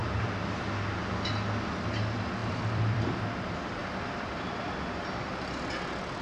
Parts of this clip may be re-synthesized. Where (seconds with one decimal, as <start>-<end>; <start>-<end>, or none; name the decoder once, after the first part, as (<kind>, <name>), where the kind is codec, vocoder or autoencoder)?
2.4-3.2 (vocoder, BigVGAN v2); 3.8-5.6